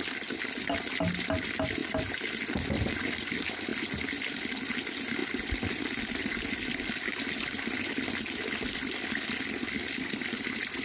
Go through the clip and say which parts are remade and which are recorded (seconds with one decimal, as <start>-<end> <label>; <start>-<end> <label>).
0.0-10.8 recorded